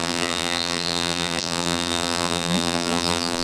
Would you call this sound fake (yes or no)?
yes